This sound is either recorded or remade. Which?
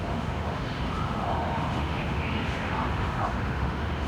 remade